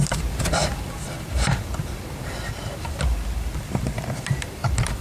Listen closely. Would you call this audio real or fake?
fake